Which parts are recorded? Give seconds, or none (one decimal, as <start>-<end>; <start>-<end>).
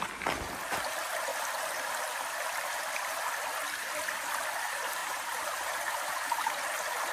0.0-5.0; 6.3-7.1